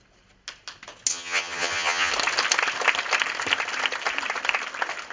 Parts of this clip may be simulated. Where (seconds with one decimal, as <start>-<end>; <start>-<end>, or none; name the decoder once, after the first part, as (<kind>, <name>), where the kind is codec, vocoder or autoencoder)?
1.1-2.1 (vocoder, HiFi-GAN)

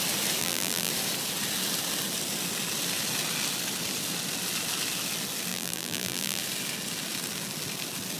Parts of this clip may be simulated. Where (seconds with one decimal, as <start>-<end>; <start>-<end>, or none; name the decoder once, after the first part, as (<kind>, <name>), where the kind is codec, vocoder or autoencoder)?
0.4-0.9 (vocoder, BigVGAN v2); 5.5-6.4

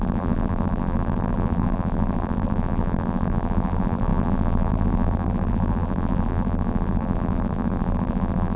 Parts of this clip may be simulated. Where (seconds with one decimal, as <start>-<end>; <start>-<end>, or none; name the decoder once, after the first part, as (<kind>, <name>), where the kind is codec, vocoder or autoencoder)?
0.0-8.6 (vocoder, BigVGAN v2)